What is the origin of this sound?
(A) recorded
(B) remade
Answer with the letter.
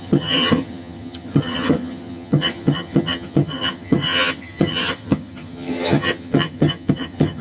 B